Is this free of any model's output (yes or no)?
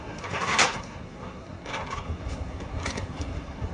no